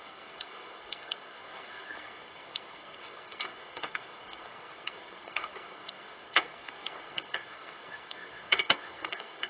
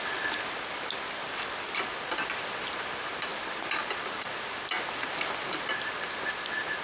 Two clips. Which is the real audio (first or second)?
second